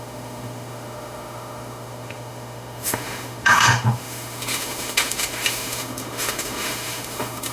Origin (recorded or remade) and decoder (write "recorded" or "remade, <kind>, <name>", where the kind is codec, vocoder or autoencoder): remade, autoencoder, DAC-VAE